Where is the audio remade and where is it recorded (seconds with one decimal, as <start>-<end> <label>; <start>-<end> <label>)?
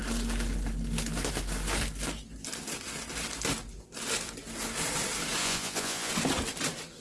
0.0-5.4 recorded; 5.4-6.1 remade; 6.1-7.0 recorded